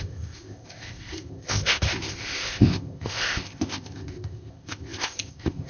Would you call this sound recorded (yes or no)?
no